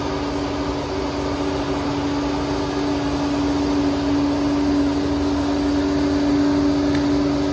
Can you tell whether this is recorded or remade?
recorded